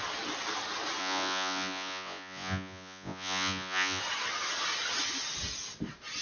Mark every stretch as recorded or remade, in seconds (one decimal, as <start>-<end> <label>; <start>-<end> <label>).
0.0-1.0 recorded; 1.0-4.0 remade; 4.0-6.2 recorded